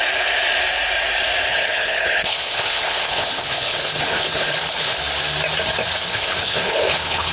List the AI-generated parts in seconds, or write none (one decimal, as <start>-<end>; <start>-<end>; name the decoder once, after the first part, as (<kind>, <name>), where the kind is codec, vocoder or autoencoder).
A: 1.5-5.0 (codec, HILCodec); 6.0-7.3

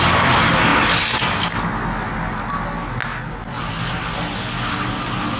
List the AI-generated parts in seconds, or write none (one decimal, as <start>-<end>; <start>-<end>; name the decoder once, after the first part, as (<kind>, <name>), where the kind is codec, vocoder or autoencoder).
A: none

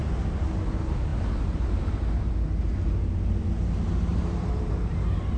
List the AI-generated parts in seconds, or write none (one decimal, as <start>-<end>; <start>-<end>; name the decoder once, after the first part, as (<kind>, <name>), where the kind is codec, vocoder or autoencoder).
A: 1.1-1.9 (vocoder, BigVGAN v2); 4.1-4.6

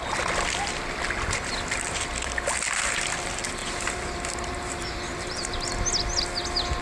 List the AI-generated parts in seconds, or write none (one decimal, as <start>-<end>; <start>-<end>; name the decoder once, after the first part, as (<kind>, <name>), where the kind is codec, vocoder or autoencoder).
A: 3.6-5.7 (vocoder, BigVGAN v2)